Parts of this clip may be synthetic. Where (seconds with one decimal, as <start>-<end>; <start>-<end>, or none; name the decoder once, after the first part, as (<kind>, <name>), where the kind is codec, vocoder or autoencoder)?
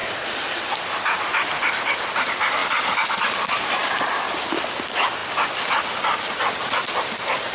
none